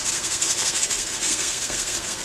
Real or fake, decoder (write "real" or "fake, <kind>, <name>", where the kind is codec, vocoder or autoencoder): fake, codec, SNAC